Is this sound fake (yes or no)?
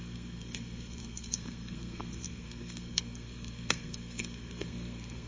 yes